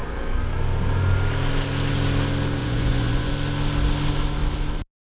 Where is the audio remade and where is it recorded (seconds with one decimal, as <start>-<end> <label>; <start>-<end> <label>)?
0.0-2.6 recorded; 2.6-3.3 remade; 3.3-5.0 recorded